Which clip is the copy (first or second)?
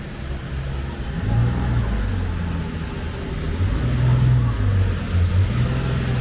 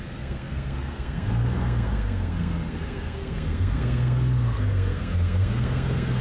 second